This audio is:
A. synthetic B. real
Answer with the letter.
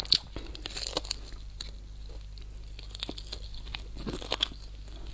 B